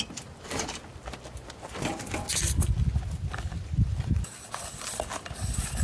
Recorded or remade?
recorded